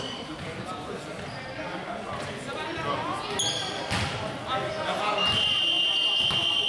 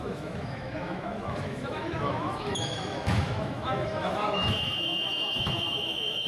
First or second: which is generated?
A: second